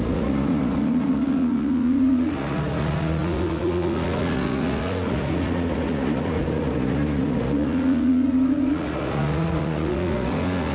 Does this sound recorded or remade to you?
remade